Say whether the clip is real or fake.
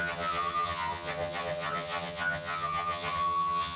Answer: fake